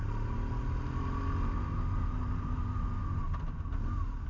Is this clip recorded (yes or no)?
yes